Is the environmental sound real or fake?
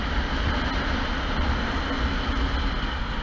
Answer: real